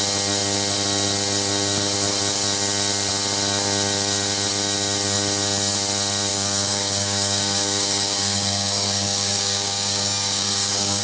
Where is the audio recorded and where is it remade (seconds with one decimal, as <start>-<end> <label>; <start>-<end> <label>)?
0.0-6.3 recorded; 6.3-11.0 remade